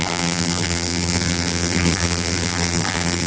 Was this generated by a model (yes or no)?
yes